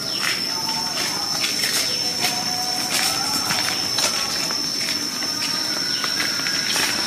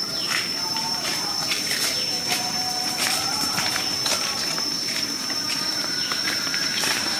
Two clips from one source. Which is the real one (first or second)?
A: first